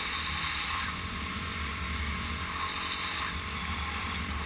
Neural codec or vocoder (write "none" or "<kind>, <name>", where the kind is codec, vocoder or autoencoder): none